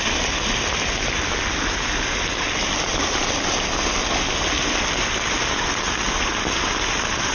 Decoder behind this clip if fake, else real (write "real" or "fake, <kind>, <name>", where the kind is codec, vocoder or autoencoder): real